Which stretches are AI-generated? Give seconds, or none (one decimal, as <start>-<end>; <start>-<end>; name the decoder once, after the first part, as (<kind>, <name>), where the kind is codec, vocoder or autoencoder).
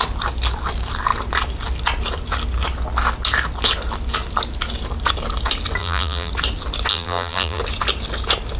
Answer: 5.8-6.3 (vocoder, BigVGAN v2); 6.9-7.6